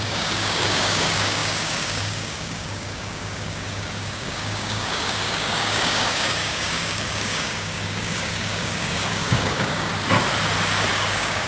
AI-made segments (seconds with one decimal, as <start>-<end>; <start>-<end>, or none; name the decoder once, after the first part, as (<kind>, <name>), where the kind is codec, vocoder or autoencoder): 0.0-9.9 (codec, DAC); 10.9-11.5